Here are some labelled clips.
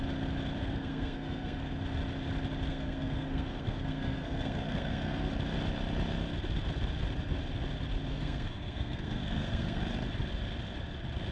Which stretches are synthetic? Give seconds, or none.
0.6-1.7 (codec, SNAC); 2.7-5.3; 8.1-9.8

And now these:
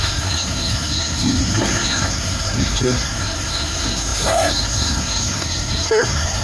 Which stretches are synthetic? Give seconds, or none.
0.0-6.4 (codec, SNAC)

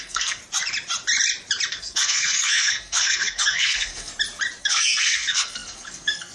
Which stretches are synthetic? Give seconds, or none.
0.0-0.4 (codec, SNAC); 1.7-4.1; 4.6-6.3

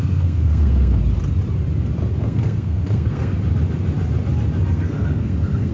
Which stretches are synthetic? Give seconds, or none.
0.0-1.0 (codec, SNAC); 2.2-3.3; 4.7-5.7